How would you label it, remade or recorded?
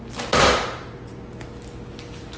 recorded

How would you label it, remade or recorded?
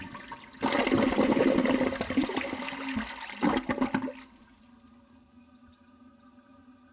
recorded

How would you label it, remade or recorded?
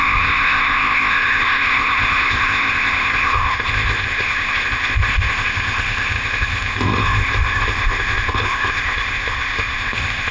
remade